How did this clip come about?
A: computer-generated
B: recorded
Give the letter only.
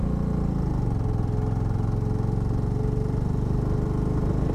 B